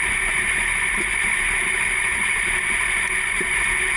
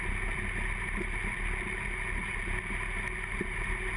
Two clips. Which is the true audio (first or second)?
second